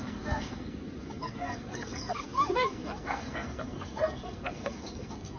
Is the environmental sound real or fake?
fake